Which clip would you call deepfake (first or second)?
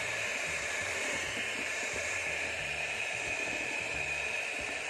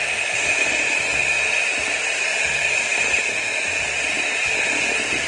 first